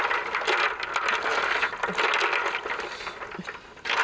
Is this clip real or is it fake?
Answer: real